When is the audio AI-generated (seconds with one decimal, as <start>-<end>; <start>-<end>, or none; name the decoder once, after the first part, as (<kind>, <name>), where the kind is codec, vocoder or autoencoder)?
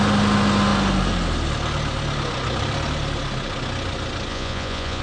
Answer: 4.3-5.0 (vocoder, Vocos)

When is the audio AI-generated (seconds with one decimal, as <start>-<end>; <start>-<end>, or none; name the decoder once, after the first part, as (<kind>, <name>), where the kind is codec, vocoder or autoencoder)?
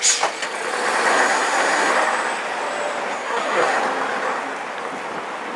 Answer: 1.1-1.9 (codec, SNAC); 3.1-3.8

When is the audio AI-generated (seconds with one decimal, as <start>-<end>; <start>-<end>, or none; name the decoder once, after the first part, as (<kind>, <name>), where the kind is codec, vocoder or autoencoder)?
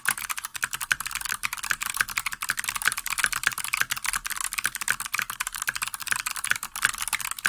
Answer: 0.5-3.6 (vocoder, BigVGAN v2); 6.0-7.0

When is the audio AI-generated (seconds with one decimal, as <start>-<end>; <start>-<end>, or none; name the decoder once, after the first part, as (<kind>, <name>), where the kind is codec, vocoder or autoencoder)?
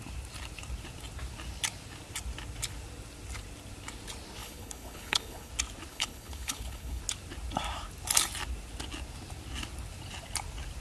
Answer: 4.4-5.5 (codec, HILCodec); 5.9-7.0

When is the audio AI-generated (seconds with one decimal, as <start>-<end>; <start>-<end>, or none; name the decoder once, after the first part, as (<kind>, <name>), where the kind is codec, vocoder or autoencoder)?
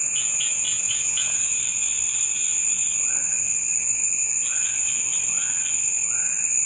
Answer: 0.0-1.6 (vocoder, Vocos)